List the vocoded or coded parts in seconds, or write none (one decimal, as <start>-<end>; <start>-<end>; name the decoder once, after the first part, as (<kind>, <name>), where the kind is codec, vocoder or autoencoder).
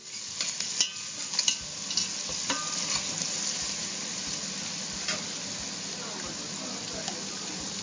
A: none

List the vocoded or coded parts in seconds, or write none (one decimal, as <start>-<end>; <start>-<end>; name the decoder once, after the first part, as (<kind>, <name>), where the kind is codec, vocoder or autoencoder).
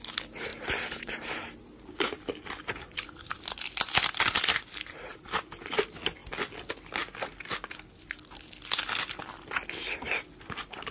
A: 0.5-2.2 (vocoder, BigVGAN v2); 5.1-5.8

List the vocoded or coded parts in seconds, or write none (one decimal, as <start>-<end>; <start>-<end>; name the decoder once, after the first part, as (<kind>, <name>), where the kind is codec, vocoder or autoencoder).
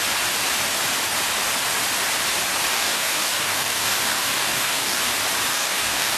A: 2.7-5.0 (codec, DAC); 5.5-6.2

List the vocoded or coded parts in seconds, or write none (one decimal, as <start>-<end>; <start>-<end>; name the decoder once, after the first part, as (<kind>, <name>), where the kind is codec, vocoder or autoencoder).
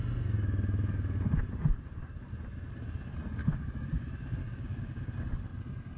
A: 3.4-4.0 (codec, DAC); 4.4-5.1